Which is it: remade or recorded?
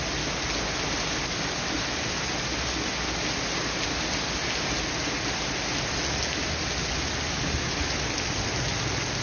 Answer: recorded